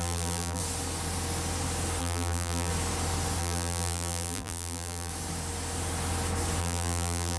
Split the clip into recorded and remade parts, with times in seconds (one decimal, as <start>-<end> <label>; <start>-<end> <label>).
0.0-0.6 remade; 0.6-2.0 recorded; 2.0-2.7 remade; 2.7-3.4 recorded; 3.4-5.1 remade; 5.1-6.6 recorded; 6.6-7.4 remade